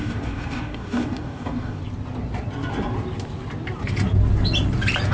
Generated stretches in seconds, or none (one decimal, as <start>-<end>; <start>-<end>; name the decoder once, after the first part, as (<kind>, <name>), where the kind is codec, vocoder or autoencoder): 0.0-1.8 (codec, DAC)